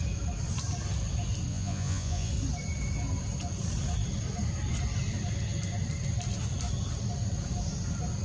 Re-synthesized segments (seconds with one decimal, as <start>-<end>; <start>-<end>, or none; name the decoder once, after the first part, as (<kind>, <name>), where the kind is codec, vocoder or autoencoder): 1.5-2.3 (vocoder, Vocos)